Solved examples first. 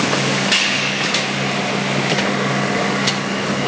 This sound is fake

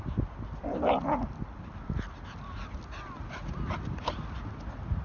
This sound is real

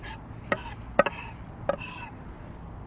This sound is real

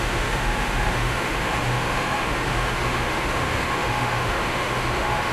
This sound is fake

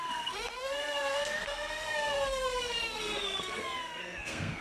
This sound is fake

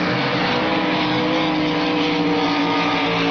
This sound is real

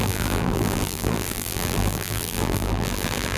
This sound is fake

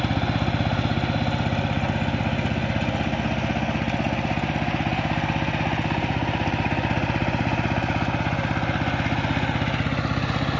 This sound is real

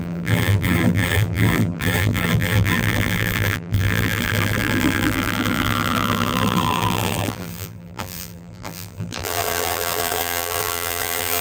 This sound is fake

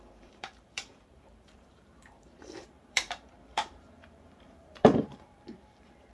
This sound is fake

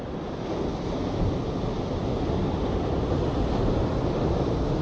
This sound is real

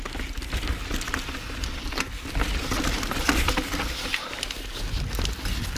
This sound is real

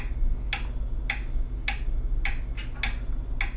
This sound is real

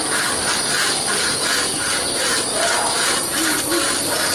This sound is real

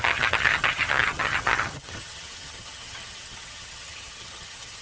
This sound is fake